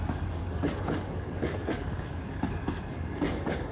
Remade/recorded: remade